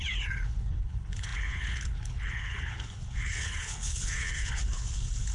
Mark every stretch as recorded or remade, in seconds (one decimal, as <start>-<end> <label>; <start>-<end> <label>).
0.0-5.3 remade